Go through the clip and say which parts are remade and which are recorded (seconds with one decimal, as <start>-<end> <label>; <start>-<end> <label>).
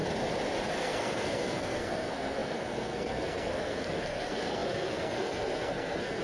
0.0-0.7 recorded; 0.7-6.2 remade